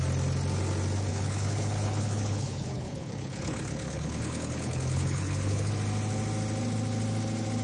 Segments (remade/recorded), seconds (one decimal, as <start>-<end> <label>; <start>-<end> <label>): 0.0-1.1 recorded; 1.1-5.7 remade; 5.7-7.6 recorded